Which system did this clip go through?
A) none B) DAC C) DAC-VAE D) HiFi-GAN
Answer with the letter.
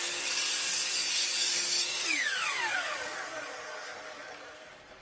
B